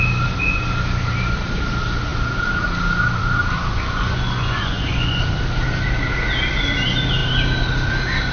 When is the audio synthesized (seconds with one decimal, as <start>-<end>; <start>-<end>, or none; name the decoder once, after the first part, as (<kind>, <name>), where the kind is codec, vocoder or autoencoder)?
3.7-5.2 (vocoder, Vocos)